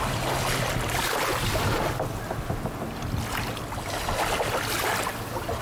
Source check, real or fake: real